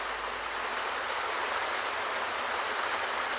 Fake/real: real